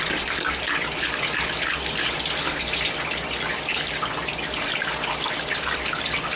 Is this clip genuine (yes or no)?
yes